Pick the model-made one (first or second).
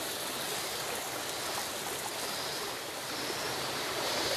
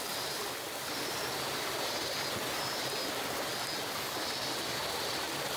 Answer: first